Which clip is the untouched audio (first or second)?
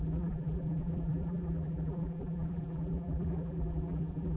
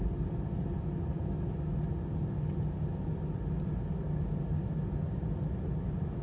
second